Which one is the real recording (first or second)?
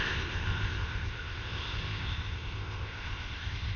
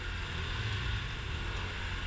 second